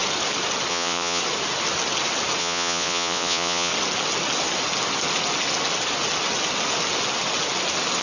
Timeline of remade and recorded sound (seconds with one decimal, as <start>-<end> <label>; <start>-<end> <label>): 0.0-0.7 recorded; 0.7-1.2 remade; 1.2-2.4 recorded; 2.4-3.7 remade; 3.7-8.0 recorded